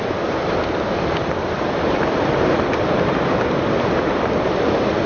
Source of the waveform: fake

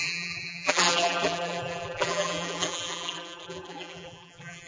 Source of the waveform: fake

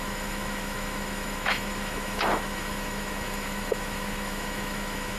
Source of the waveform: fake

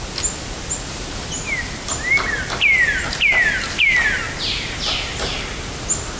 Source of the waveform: real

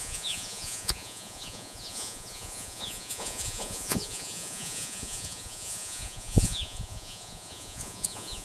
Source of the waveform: fake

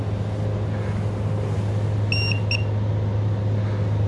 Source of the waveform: real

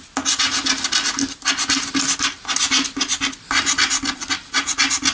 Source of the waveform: real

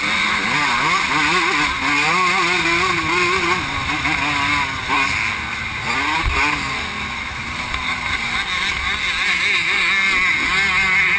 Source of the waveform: real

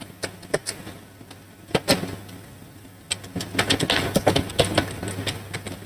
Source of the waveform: real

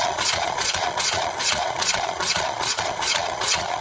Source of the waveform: fake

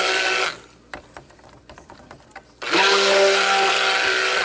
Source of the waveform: real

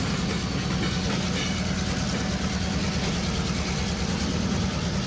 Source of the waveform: real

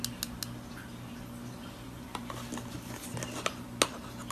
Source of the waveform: real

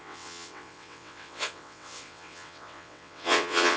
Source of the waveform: fake